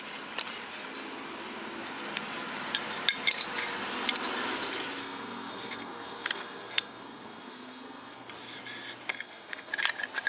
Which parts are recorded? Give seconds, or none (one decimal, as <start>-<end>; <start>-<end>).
0.0-5.0; 8.3-9.1; 9.7-10.3